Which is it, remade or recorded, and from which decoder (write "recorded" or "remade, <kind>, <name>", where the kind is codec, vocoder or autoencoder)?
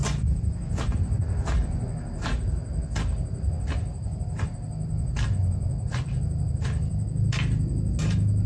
recorded